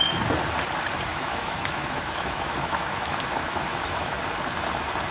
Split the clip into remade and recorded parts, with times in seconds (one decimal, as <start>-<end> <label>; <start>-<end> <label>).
0.0-1.1 recorded; 1.1-4.2 remade; 4.2-5.1 recorded